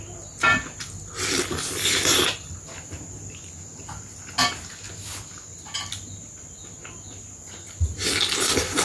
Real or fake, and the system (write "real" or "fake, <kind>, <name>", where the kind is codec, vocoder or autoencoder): real